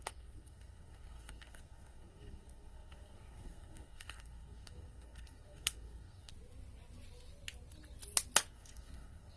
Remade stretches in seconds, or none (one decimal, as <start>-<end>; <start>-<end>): 0.0-6.3; 8.5-9.4